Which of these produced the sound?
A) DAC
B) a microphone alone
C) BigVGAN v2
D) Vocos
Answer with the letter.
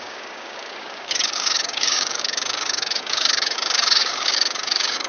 A